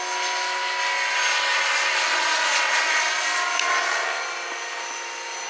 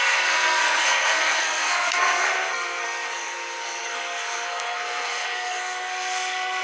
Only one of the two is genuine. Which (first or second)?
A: first